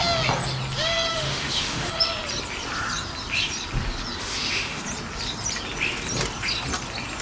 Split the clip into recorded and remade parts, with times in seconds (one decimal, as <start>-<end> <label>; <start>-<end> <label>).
0.0-1.1 recorded; 1.1-1.9 remade; 1.9-4.2 recorded; 4.2-4.8 remade; 4.8-7.2 recorded